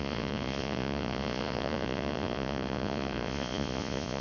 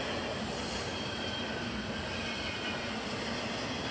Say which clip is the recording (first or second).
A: second